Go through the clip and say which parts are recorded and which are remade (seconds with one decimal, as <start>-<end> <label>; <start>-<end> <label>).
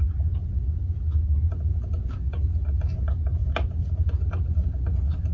0.0-5.3 recorded